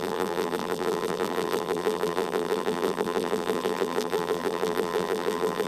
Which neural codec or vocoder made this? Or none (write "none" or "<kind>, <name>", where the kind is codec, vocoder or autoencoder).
vocoder, BigVGAN v2